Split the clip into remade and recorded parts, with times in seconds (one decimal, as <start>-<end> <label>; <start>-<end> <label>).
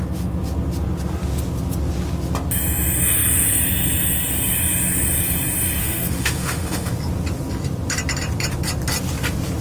0.0-5.8 recorded; 5.8-6.9 remade; 6.9-9.6 recorded